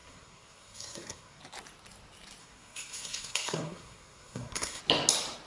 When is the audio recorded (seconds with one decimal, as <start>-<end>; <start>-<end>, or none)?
1.4-2.4; 4.8-5.5